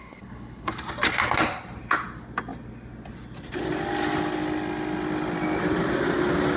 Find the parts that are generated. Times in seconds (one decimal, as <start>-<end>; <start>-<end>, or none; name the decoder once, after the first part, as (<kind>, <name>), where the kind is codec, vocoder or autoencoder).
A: 0.0-0.7 (codec, HILCodec)